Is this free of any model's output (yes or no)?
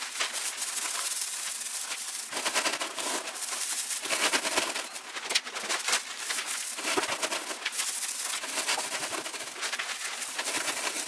yes